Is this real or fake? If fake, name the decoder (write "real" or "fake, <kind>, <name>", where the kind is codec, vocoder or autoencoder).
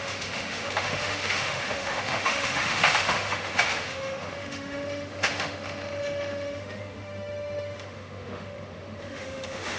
fake, autoencoder, DAC-VAE